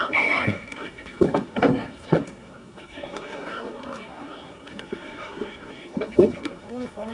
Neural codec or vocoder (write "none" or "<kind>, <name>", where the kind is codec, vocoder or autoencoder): codec, SNAC